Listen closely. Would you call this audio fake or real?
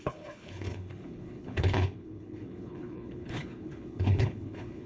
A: fake